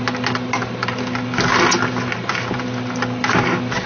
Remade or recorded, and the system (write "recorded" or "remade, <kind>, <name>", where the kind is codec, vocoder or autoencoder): recorded